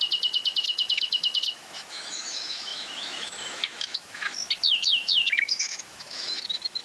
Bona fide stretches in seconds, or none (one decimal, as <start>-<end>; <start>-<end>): none